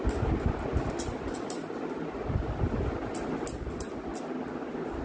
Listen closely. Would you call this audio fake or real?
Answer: real